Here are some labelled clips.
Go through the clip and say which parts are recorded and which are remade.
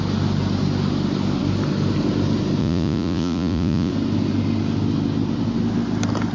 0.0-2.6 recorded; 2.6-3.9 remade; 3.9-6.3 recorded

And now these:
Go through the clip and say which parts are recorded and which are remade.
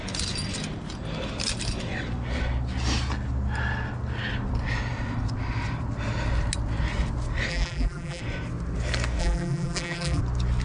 0.0-7.5 recorded; 7.5-8.2 remade; 8.2-9.2 recorded; 9.2-10.2 remade; 10.2-10.6 recorded